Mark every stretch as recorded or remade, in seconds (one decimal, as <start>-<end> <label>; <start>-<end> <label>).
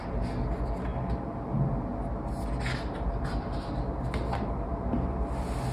0.0-5.7 recorded